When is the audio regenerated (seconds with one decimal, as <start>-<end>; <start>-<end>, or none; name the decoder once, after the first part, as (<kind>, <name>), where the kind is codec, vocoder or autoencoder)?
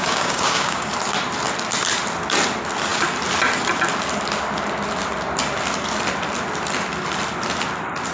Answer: 0.0-0.9 (codec, DAC)